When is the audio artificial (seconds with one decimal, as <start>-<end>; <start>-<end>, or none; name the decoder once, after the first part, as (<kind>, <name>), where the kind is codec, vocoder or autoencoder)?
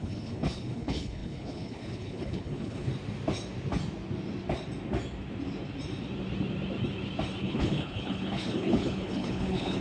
0.0-2.9 (codec, HILCodec); 7.4-9.8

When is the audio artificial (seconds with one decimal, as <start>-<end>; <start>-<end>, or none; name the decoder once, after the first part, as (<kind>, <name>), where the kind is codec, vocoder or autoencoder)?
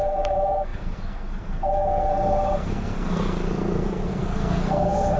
0.0-5.2 (codec, SNAC)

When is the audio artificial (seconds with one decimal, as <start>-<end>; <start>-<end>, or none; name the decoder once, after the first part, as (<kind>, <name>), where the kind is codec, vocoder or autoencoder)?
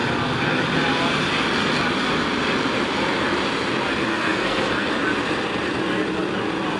4.1-4.9 (codec, SNAC)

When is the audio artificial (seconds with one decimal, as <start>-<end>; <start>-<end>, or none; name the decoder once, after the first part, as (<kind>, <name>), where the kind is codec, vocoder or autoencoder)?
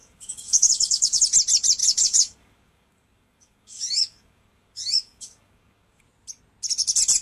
0.0-1.2 (codec, DAC); 1.8-6.0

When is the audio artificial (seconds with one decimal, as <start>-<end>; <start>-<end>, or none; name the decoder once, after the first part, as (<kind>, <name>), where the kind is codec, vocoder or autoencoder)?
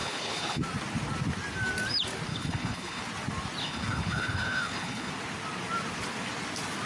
0.0-0.6 (codec, HILCodec); 2.3-3.0; 3.6-5.1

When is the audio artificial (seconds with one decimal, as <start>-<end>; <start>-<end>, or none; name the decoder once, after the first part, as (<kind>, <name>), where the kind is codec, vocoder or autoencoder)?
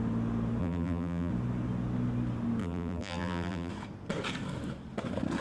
0.6-1.3 (vocoder, BigVGAN v2); 2.6-3.7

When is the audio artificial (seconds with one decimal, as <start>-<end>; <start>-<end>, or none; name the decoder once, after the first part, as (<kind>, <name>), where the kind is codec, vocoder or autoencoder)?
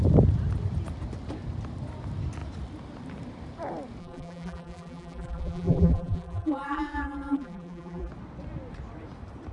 4.0-8.1 (vocoder, BigVGAN v2)